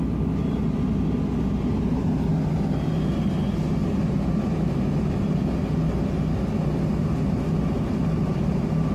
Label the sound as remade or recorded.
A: recorded